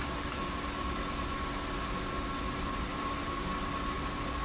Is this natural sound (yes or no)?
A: yes